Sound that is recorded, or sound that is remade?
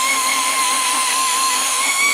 remade